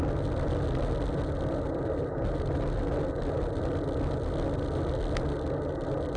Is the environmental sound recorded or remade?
recorded